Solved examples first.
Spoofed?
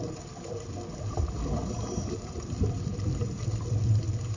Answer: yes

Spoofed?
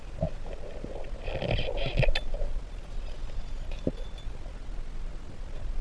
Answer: no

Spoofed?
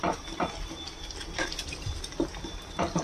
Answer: yes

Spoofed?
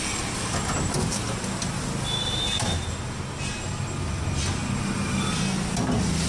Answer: no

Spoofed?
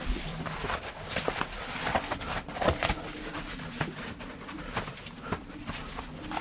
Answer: yes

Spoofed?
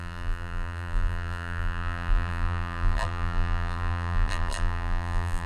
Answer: yes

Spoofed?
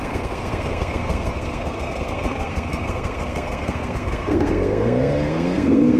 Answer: yes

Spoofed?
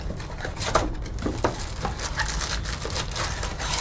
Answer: no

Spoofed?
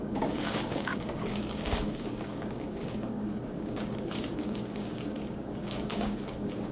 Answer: yes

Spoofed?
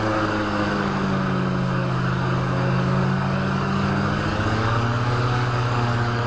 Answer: yes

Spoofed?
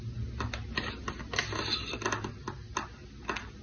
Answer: no